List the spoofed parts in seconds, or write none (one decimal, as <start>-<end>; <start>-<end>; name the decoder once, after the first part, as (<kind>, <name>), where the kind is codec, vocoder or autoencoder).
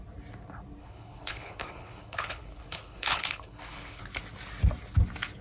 0.8-4.0 (codec, HILCodec)